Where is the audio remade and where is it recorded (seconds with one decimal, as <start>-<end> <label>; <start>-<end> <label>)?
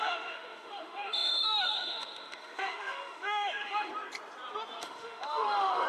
0.0-3.9 remade; 3.9-4.8 recorded; 4.8-5.9 remade